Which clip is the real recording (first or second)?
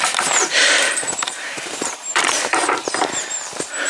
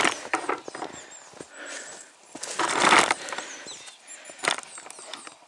second